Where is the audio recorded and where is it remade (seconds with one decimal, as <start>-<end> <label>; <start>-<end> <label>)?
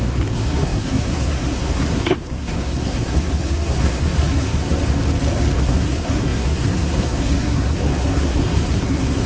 0.0-4.8 remade; 4.8-5.6 recorded; 5.6-9.3 remade